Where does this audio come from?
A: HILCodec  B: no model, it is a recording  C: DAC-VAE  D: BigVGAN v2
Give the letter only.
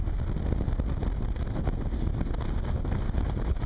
B